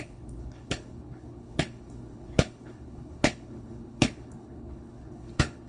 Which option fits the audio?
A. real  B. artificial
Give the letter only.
B